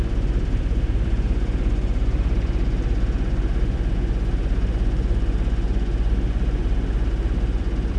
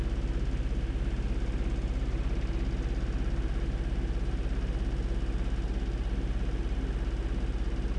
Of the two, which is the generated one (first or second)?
first